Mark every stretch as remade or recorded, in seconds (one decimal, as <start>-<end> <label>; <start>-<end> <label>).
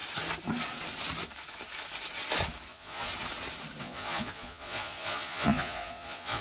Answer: 0.0-2.7 recorded; 2.7-3.1 remade; 3.1-3.8 recorded; 3.8-6.4 remade